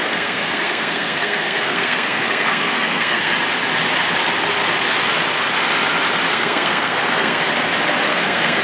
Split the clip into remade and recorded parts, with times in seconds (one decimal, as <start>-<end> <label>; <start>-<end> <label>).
0.0-3.3 remade; 3.3-6.3 recorded; 6.3-7.4 remade; 7.4-8.1 recorded; 8.1-8.6 remade